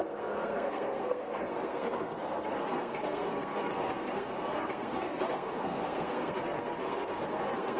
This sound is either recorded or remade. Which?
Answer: remade